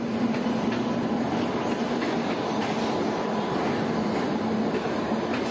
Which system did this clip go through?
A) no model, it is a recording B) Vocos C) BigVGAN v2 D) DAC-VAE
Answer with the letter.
A